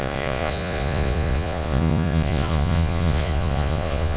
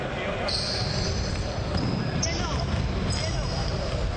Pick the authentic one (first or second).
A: second